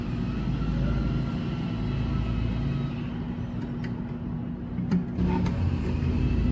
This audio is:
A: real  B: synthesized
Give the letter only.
A